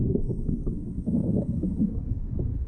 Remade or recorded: remade